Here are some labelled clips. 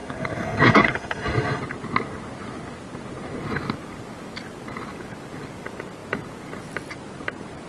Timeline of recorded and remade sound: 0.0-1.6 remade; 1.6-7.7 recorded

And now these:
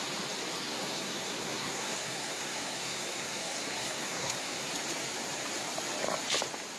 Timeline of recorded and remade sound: 0.0-0.6 recorded; 0.6-4.7 remade; 4.7-6.8 recorded

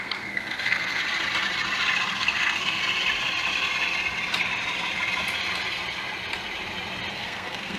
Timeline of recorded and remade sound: 0.0-1.0 remade; 1.0-2.1 recorded; 2.1-2.8 remade; 2.8-7.1 recorded; 7.1-7.8 remade

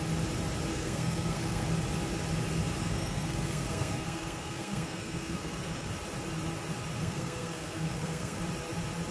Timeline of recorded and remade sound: 0.0-0.7 recorded; 0.7-1.7 remade; 1.7-2.8 recorded; 2.8-5.9 remade; 5.9-7.0 recorded; 7.0-8.4 remade; 8.4-9.1 recorded

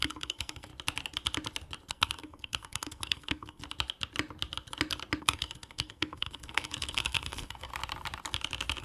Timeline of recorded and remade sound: 0.0-0.7 remade; 0.7-1.9 recorded; 1.9-3.6 remade; 3.6-5.2 recorded; 5.2-7.7 remade; 7.7-8.8 recorded